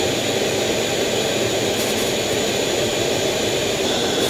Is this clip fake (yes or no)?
no